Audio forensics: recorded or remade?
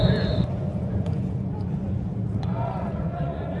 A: remade